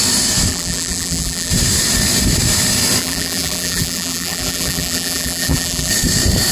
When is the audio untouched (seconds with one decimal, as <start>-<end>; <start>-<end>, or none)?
0.0-0.5; 1.5-3.0; 5.9-6.5